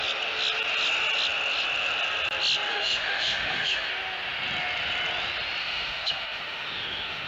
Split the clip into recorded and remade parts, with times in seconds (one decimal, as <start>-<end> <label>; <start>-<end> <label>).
0.0-2.7 recorded; 2.7-3.9 remade; 3.9-5.6 recorded; 5.6-7.3 remade